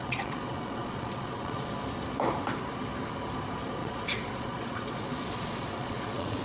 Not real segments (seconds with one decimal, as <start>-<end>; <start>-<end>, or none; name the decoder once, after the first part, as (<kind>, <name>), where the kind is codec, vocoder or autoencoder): 0.0-1.7 (vocoder, Vocos); 3.8-6.4